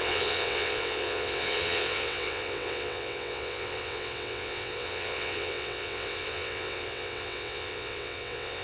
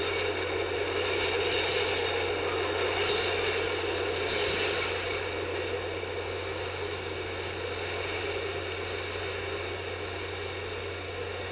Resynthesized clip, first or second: first